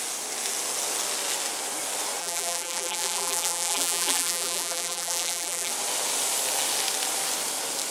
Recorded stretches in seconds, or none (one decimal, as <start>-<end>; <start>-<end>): 0.0-2.2; 5.7-7.9